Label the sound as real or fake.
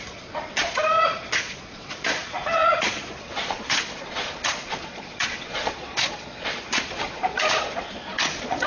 fake